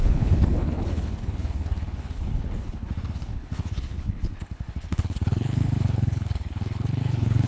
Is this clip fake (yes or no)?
yes